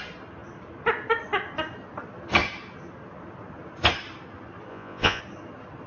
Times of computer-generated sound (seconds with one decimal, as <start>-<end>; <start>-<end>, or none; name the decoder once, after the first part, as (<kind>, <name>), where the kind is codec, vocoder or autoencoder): 4.7-5.2 (vocoder, Vocos)